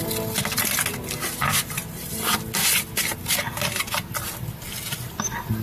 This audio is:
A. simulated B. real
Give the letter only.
B